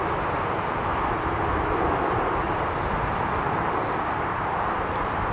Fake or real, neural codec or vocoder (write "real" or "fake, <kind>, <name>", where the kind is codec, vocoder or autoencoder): real